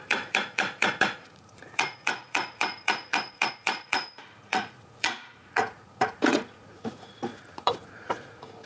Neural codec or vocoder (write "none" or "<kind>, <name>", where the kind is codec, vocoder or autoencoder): vocoder, Vocos